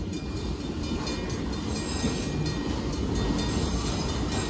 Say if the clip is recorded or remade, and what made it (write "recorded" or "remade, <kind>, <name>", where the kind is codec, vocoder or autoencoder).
recorded